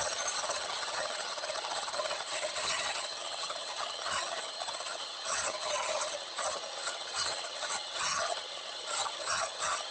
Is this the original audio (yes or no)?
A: no